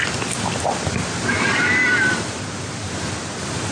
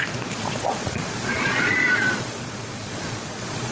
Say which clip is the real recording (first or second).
first